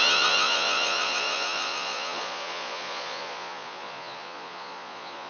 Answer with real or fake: fake